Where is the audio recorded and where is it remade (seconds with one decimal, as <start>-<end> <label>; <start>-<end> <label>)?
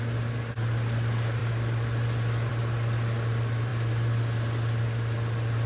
0.0-5.7 recorded